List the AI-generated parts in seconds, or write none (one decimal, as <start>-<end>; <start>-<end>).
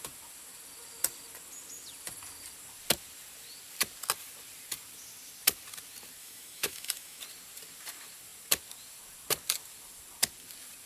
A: 6.2-7.2